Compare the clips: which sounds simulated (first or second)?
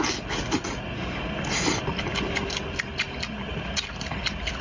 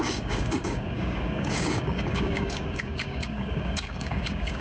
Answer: second